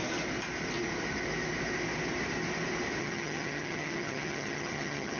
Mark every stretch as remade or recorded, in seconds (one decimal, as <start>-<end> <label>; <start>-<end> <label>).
0.0-3.0 recorded; 3.0-5.2 remade